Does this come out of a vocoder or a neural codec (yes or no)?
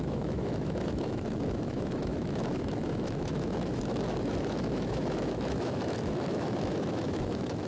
yes